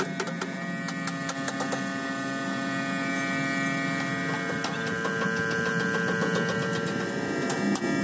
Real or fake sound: real